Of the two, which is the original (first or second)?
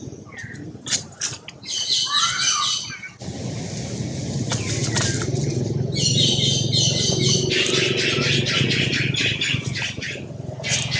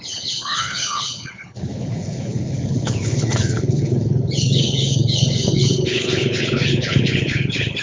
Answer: first